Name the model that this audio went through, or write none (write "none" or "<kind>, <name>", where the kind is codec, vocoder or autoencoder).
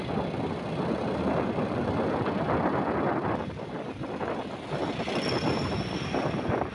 none